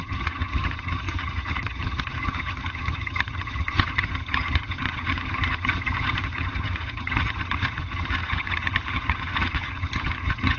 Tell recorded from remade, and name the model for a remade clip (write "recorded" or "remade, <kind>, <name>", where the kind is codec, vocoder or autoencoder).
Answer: remade, vocoder, HiFi-GAN